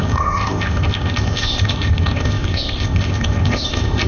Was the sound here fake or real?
fake